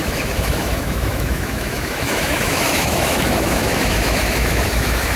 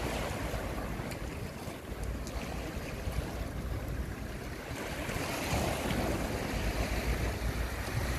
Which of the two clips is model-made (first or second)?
first